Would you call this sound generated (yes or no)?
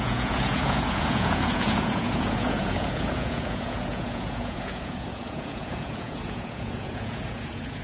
yes